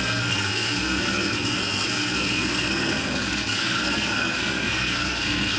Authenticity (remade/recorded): remade